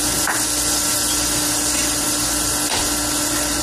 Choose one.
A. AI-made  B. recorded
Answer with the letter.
B